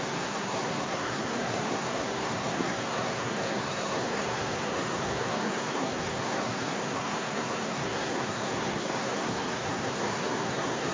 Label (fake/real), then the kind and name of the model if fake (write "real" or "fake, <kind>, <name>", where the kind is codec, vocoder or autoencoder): fake, codec, SNAC